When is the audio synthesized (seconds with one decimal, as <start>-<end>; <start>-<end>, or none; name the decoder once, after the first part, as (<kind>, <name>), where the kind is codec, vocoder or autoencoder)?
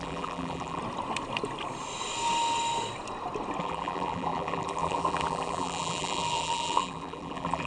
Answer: 0.0-0.8 (vocoder, BigVGAN v2); 3.6-7.7